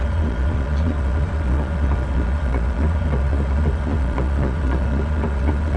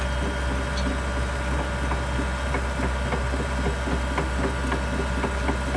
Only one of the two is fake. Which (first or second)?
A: first